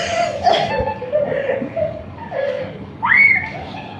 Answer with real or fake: fake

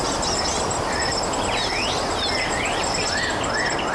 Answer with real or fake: real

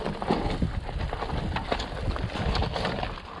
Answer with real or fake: real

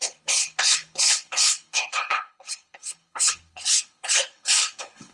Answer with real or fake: fake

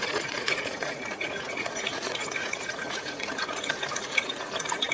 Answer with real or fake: fake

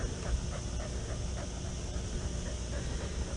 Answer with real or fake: real